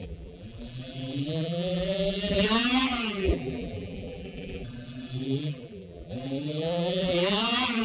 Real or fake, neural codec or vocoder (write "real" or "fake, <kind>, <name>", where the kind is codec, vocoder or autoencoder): fake, vocoder, BigVGAN v2